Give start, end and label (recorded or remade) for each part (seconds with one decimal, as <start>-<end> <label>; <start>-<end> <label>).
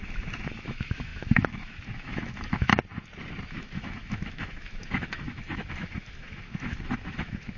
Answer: 0.0-2.7 remade; 2.7-3.5 recorded; 3.5-7.6 remade